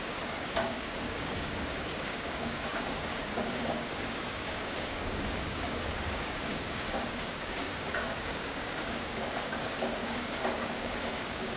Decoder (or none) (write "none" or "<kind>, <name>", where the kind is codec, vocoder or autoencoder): codec, DAC